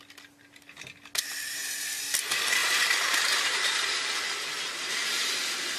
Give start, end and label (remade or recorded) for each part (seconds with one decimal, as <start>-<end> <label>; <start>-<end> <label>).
0.0-2.6 recorded; 2.6-4.2 remade; 4.2-5.8 recorded